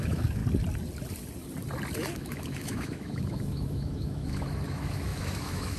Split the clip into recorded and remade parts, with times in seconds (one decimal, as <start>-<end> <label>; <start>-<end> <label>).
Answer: 0.0-0.4 remade; 0.4-2.1 recorded; 2.1-5.8 remade